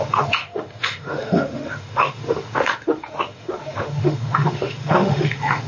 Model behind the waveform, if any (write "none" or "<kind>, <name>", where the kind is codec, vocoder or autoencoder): autoencoder, DAC-VAE